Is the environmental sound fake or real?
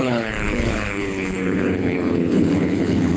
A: fake